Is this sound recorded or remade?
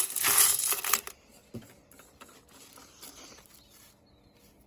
recorded